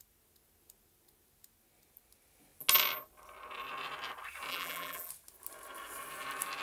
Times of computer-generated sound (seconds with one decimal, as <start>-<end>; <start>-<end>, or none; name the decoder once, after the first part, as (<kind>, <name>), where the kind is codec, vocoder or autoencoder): 4.5-5.1 (vocoder, BigVGAN v2)